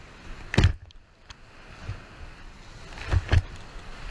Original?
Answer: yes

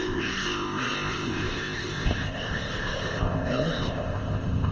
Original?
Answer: no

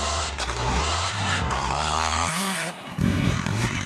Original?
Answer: no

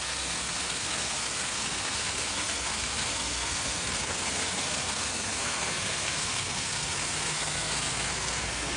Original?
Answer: no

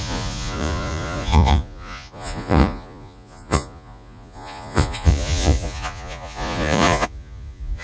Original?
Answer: no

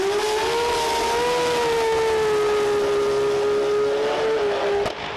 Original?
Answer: yes